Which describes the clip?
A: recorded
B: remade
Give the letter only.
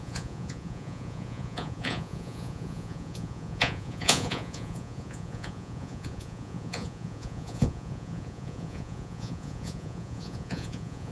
B